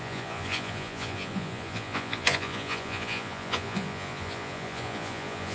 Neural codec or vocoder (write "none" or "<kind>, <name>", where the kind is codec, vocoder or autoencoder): vocoder, Vocos